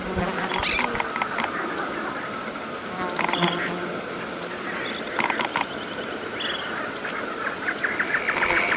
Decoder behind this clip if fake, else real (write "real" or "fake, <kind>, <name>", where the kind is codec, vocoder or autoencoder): real